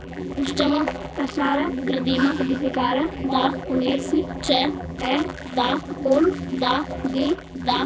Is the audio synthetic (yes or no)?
yes